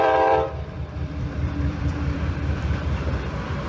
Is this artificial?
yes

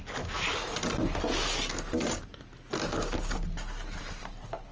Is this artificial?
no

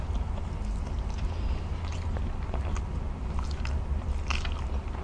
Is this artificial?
no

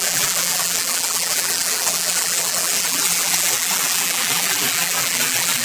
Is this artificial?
yes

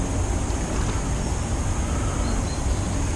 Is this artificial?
no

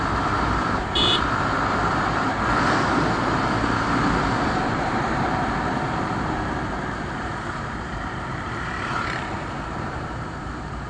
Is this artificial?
yes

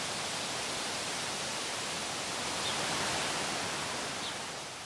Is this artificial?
yes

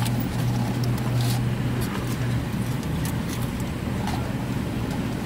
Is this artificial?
no